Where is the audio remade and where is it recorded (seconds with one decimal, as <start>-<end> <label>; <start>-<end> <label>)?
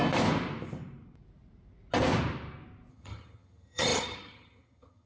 0.0-2.9 recorded; 2.9-5.1 remade